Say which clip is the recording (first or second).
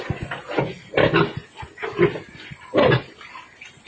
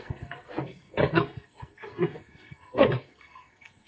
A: first